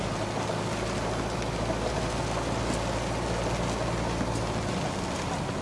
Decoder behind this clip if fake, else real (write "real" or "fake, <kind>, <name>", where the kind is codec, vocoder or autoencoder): real